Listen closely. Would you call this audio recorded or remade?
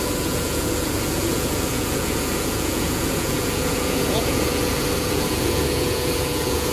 remade